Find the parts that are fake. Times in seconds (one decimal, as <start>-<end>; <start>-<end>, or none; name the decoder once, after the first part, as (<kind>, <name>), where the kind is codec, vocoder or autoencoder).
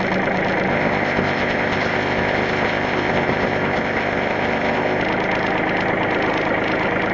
0.7-5.0 (codec, ZipCodec)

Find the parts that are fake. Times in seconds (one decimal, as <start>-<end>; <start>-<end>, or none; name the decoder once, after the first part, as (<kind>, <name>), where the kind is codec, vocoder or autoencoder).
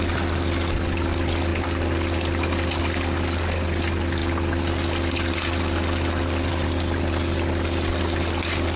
none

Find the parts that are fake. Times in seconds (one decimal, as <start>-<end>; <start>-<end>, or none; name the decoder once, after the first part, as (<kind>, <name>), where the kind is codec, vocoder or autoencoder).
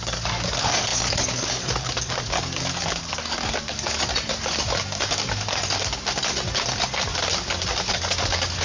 0.0-4.1 (codec, DAC); 7.9-8.6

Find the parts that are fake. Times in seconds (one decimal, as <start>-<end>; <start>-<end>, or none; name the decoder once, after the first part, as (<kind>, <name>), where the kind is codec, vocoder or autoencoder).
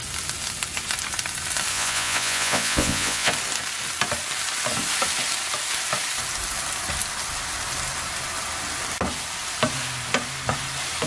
1.7-3.3 (vocoder, Vocos)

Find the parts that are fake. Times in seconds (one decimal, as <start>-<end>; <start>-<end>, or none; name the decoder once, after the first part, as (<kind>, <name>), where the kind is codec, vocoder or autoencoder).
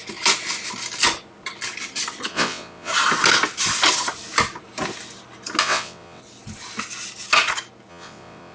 2.3-2.9 (vocoder, WaveNeXt); 5.6-6.2; 7.9-8.5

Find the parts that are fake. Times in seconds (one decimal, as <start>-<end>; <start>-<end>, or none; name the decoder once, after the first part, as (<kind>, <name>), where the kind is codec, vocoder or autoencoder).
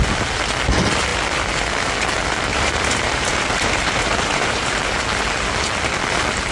2.5-5.0 (vocoder, BigVGAN v2)